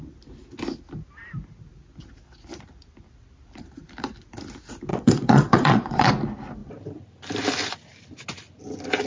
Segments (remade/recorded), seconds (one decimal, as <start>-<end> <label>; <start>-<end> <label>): 0.0-4.9 recorded; 4.9-6.1 remade; 6.1-9.1 recorded

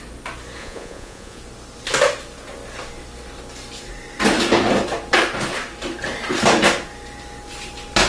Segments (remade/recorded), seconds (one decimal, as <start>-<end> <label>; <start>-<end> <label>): 0.0-0.6 recorded; 0.6-1.4 remade; 1.4-8.1 recorded

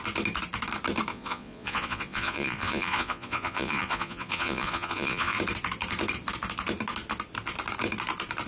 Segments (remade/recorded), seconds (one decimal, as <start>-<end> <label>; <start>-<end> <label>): 0.0-1.1 recorded; 1.1-5.4 remade; 5.4-8.5 recorded

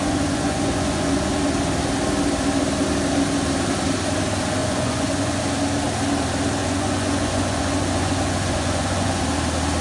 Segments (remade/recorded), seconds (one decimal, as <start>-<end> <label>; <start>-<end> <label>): 0.0-1.3 remade; 1.3-4.6 recorded; 4.6-5.4 remade; 5.4-6.6 recorded; 6.6-9.2 remade; 9.2-9.8 recorded

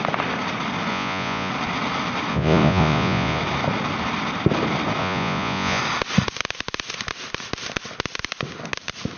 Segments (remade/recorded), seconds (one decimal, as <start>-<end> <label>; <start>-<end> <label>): 0.0-0.9 recorded; 0.9-1.5 remade; 1.5-2.3 recorded; 2.3-3.4 remade; 3.4-5.0 recorded; 5.0-5.8 remade; 5.8-9.2 recorded

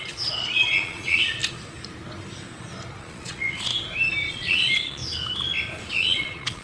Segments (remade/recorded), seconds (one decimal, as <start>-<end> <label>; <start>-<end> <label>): 0.0-1.4 remade; 1.4-3.0 recorded; 3.0-3.7 remade; 3.7-4.3 recorded; 4.3-5.0 remade; 5.0-5.9 recorded; 5.9-6.6 remade